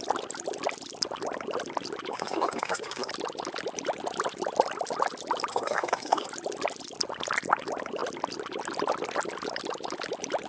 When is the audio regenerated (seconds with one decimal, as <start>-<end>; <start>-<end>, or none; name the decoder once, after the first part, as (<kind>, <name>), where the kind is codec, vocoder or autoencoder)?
2.1-3.1 (codec, SNAC); 5.5-6.3